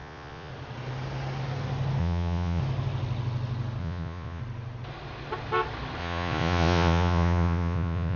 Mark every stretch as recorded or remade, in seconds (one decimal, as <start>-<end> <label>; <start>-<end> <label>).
0.0-0.5 remade; 0.5-2.0 recorded; 2.0-2.6 remade; 2.6-3.8 recorded; 3.8-4.4 remade; 4.4-6.0 recorded; 6.0-8.2 remade